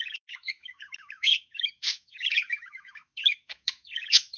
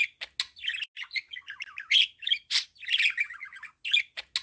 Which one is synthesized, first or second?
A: first